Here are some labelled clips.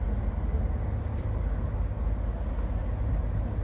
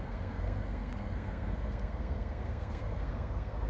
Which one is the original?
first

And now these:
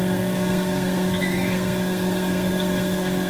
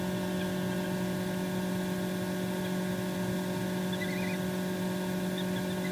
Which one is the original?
second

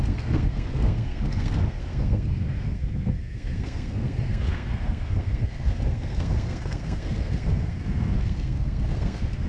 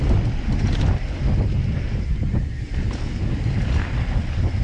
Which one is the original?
second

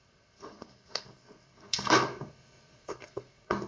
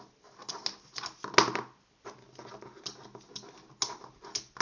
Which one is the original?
second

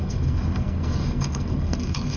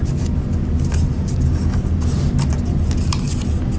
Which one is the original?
second